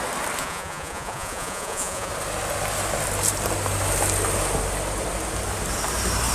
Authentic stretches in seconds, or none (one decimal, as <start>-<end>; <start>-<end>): 0.0-0.4; 2.1-6.3

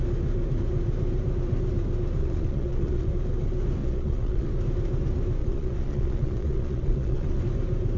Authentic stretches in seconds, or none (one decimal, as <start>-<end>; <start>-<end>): 0.0-2.2; 3.1-3.8; 4.5-5.4; 7.4-8.0